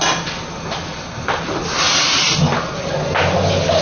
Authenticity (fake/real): real